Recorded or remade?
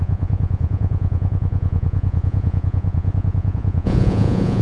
remade